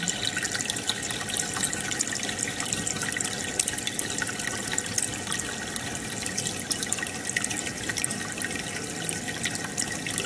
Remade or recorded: recorded